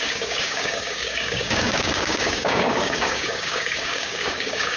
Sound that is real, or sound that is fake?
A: fake